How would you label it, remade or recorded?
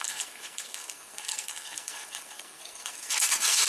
remade